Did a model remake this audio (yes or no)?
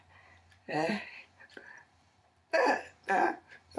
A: yes